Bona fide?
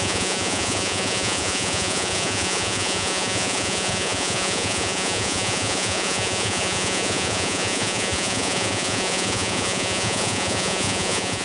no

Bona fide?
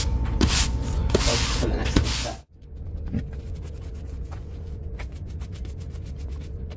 no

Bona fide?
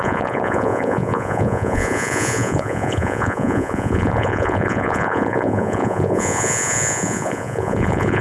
no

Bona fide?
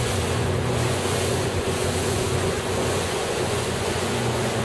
no